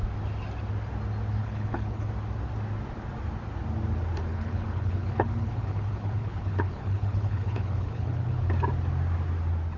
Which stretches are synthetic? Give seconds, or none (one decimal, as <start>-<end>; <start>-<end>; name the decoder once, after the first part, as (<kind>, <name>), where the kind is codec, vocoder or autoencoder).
1.4-2.1 (codec, HILCodec); 4.3-8.5